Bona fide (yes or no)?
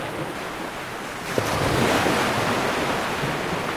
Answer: yes